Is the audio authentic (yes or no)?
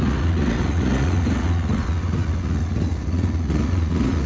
no